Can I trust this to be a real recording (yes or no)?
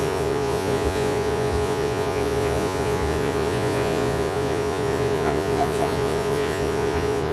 no